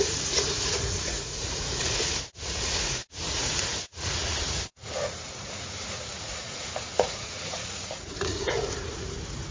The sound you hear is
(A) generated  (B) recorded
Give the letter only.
A